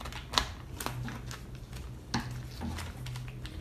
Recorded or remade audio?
recorded